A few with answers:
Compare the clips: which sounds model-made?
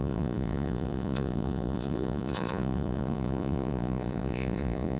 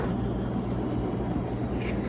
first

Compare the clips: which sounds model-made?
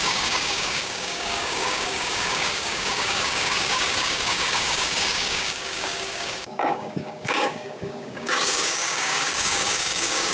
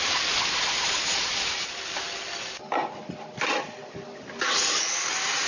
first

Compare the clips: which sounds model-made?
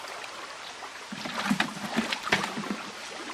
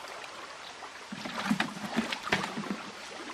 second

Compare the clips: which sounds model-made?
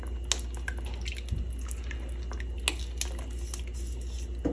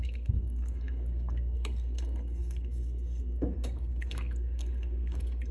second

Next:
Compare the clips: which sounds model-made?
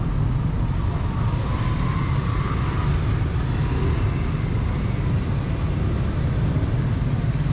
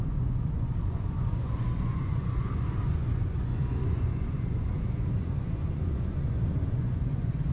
second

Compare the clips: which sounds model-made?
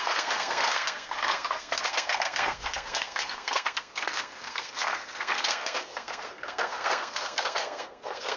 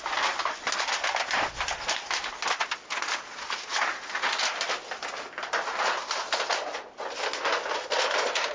first